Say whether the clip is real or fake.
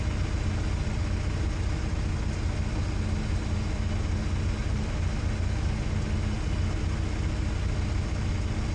real